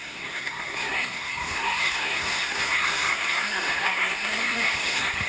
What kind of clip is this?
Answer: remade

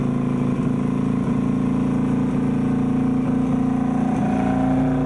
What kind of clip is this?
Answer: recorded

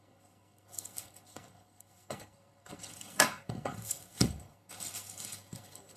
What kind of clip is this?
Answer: remade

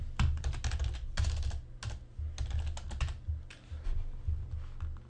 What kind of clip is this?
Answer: recorded